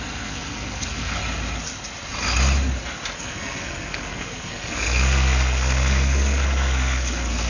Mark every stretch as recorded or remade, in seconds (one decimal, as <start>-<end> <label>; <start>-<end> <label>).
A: 0.0-1.2 remade; 1.2-3.2 recorded; 3.2-7.5 remade